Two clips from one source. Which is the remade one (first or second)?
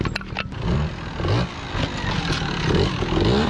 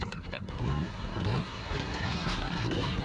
second